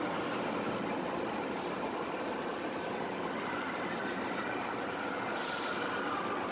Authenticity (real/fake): real